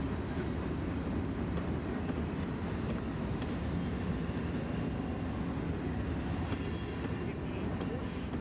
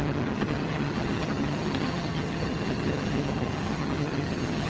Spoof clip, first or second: second